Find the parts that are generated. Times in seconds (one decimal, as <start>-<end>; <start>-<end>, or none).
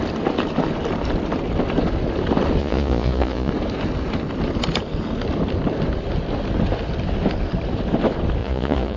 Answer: 2.6-3.5; 8.4-9.0